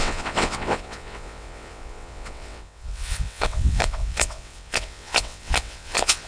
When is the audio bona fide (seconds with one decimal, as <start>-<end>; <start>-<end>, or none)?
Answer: none